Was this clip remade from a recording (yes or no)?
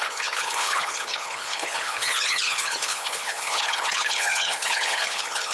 yes